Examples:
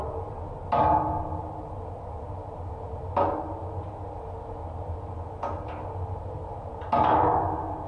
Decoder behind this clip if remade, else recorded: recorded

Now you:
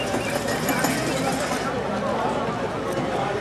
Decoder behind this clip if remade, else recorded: recorded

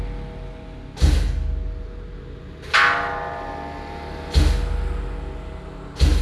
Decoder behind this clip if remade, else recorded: recorded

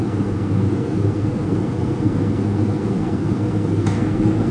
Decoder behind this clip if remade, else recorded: remade, codec, SNAC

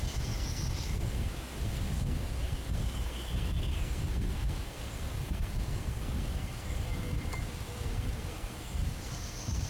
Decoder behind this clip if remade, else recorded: remade, codec, SNAC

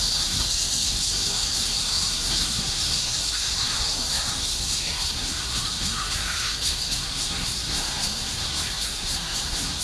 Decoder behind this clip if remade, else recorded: remade, codec, SNAC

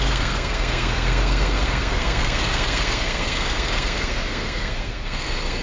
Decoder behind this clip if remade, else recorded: remade, codec, SNAC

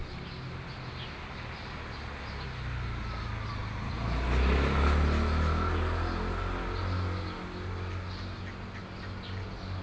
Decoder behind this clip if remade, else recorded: recorded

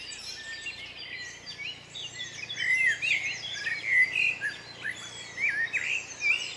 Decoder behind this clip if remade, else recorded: recorded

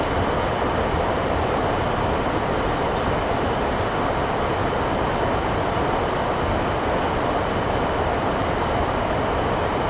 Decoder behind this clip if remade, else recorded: recorded